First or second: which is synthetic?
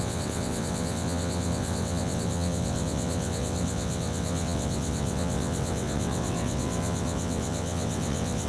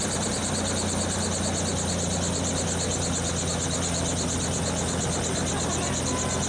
first